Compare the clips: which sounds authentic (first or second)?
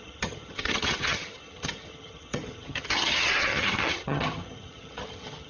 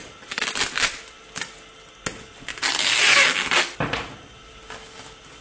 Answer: second